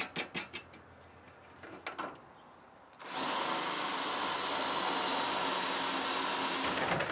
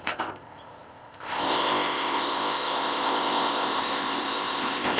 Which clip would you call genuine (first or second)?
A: first